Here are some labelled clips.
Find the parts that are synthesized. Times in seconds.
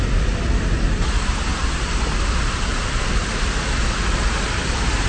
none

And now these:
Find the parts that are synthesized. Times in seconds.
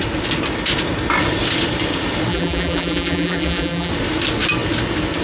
2.3-3.9 (vocoder, BigVGAN v2)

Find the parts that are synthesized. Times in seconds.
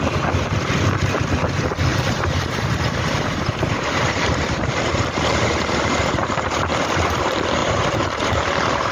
1.9-6.3 (vocoder, BigVGAN v2); 7.6-8.9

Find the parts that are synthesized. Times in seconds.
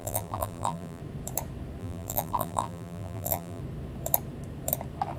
0.0-1.0 (vocoder, BigVGAN v2); 1.8-3.6